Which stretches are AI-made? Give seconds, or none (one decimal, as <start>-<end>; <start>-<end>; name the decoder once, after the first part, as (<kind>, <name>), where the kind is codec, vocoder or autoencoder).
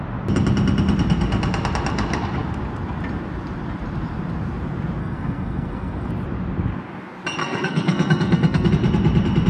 5.0-6.1 (codec, SNAC); 7.4-8.7